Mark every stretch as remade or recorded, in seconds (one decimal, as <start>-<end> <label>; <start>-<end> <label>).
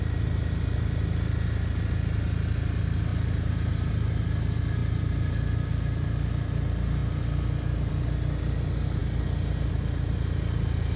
0.0-3.1 recorded; 3.1-3.9 remade; 3.9-11.0 recorded